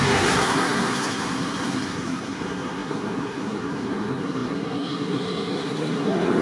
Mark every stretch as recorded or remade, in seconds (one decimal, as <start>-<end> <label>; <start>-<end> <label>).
0.0-6.4 remade